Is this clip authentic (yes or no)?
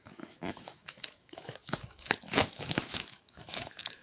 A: no